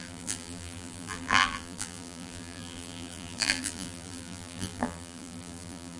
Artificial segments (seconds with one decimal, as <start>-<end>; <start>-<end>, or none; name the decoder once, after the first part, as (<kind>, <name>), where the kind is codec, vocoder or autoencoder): 0.0-6.0 (vocoder, BigVGAN v2)